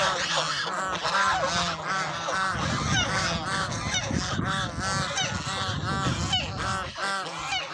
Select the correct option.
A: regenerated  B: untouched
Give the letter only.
B